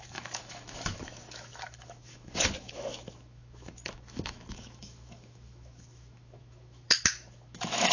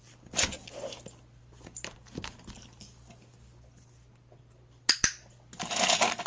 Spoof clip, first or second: first